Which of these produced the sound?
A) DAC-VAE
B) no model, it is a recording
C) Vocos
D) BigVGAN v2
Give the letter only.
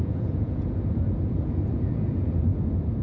C